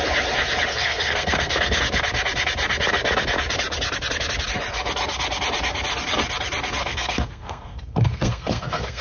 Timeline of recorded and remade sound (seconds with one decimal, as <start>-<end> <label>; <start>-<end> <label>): 0.0-0.7 recorded; 0.7-1.8 remade; 1.8-6.8 recorded; 6.8-9.0 remade